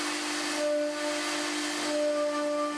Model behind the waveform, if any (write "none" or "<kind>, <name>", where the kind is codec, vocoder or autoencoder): none